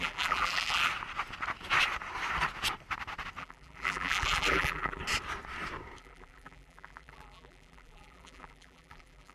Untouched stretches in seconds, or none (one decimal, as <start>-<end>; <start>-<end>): 0.9-3.4; 5.0-6.0